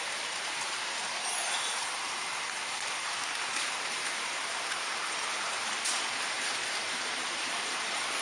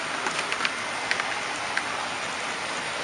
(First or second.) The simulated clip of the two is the first